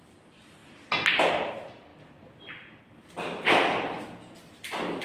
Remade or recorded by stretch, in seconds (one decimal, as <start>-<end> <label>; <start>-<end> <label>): 0.0-5.0 recorded